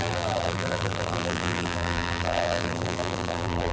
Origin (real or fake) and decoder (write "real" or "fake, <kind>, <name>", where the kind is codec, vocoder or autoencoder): fake, vocoder, BigVGAN v2